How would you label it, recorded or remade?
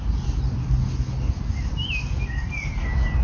recorded